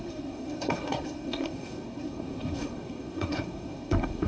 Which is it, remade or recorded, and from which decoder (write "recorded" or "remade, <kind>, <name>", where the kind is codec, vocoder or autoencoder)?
remade, codec, SNAC